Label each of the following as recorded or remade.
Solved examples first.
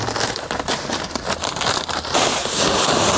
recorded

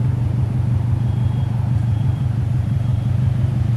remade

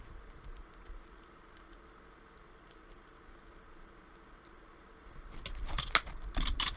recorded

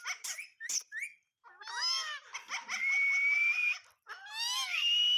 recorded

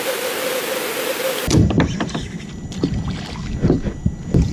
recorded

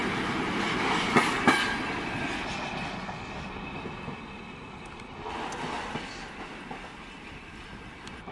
recorded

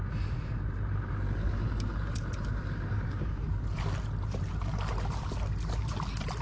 remade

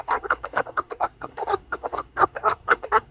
remade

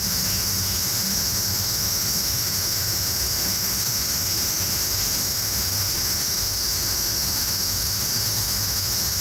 remade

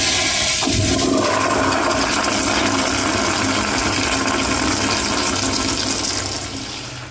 recorded